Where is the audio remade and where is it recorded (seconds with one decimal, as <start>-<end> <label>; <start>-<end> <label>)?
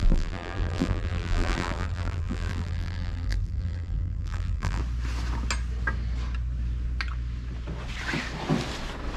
0.0-4.8 remade; 4.8-9.2 recorded